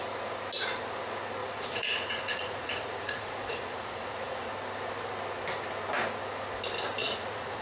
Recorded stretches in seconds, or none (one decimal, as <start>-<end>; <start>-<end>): 0.0-1.4; 4.5-7.0